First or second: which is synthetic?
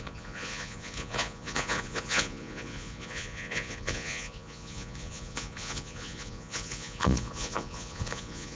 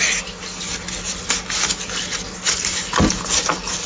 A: first